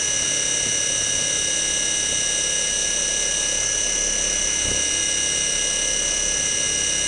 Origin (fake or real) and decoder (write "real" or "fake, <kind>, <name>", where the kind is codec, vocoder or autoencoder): real